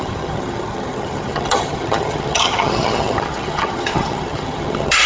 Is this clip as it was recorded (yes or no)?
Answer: no